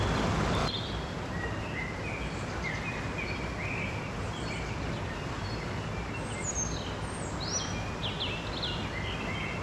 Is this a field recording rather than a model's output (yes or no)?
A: yes